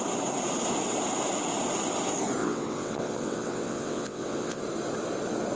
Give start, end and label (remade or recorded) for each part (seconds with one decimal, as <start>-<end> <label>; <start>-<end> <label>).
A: 0.0-2.4 recorded; 2.4-4.6 remade; 4.6-5.6 recorded